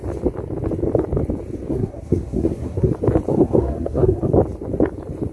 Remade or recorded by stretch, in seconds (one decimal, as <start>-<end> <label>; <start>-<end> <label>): 0.0-1.7 recorded; 1.7-2.9 remade; 2.9-3.3 recorded; 3.3-4.3 remade; 4.3-5.3 recorded